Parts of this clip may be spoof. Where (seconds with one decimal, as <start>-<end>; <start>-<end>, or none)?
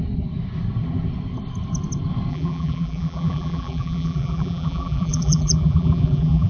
2.3-6.5